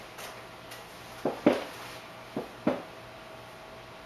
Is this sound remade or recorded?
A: recorded